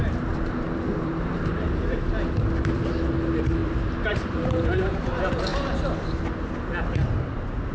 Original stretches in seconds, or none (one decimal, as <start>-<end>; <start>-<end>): 0.0-0.9; 2.1-3.6; 4.9-7.7